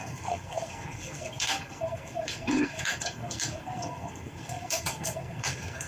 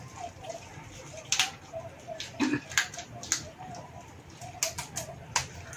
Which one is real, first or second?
second